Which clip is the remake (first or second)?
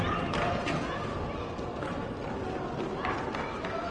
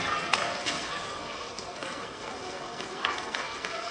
second